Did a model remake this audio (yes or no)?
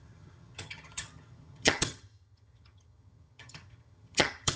yes